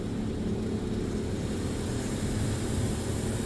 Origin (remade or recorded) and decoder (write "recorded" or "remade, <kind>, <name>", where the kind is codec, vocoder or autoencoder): recorded